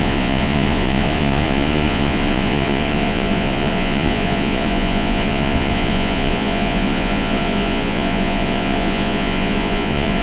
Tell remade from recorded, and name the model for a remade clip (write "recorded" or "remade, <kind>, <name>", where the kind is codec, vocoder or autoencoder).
remade, vocoder, Vocos